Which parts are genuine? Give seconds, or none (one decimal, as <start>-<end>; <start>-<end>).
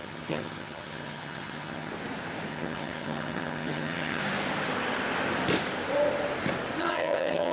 1.9-2.5; 4.2-6.8